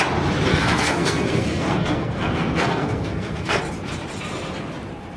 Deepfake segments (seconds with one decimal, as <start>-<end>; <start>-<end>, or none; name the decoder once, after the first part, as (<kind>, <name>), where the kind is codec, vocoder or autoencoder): 0.5-3.6 (codec, SNAC)